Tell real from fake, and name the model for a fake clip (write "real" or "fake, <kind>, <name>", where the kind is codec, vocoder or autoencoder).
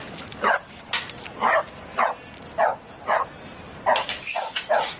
real